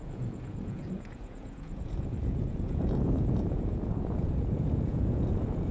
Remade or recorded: remade